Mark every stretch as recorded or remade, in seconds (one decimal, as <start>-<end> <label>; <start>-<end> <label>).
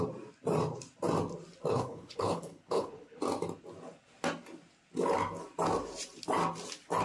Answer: 0.0-1.7 recorded; 1.7-3.2 remade; 3.2-7.0 recorded